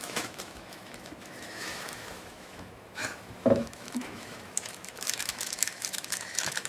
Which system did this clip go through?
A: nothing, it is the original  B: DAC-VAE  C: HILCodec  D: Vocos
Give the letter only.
B